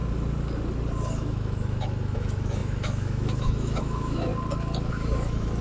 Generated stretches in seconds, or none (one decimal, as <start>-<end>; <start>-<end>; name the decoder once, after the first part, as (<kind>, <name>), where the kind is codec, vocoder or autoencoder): 1.1-4.3 (autoencoder, DAC-VAE); 4.9-5.6